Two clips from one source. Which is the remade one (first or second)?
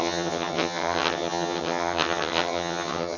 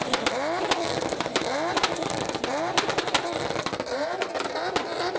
first